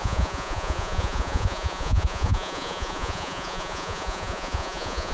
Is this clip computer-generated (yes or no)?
yes